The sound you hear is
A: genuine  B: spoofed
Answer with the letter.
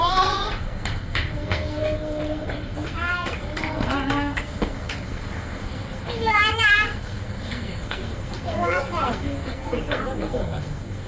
B